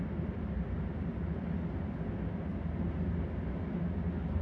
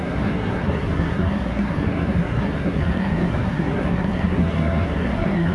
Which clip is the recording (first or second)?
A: first